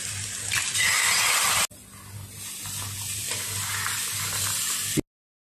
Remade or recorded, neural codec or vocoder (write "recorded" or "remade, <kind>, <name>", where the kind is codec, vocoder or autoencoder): recorded